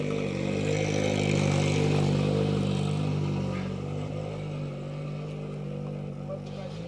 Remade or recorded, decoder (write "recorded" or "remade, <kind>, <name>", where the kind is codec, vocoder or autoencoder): recorded